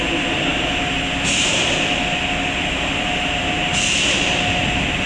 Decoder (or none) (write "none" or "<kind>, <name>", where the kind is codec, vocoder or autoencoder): none